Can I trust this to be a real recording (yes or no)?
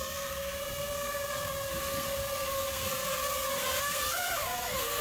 no